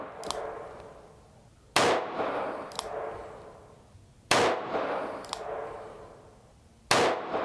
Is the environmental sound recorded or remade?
recorded